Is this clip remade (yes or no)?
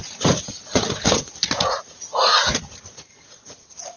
yes